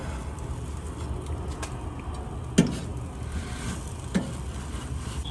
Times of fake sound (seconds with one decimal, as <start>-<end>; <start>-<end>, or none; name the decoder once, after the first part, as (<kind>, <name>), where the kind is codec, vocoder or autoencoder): none